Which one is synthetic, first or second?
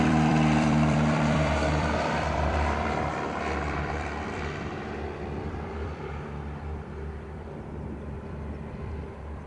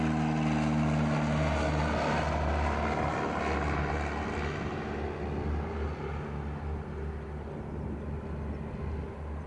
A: first